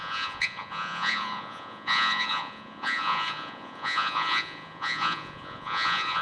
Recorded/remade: remade